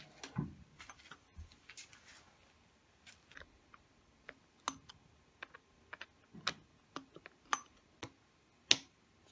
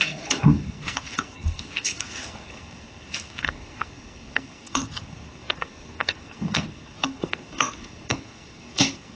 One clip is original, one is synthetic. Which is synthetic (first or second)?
second